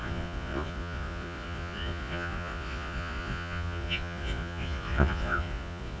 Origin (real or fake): fake